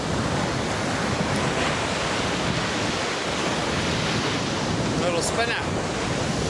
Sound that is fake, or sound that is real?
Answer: real